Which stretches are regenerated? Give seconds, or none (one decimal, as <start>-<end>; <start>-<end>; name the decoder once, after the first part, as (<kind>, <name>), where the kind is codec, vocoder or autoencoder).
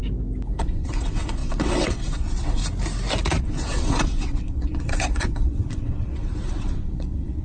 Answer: 0.6-2.6 (vocoder, WaveNeXt); 3.4-7.4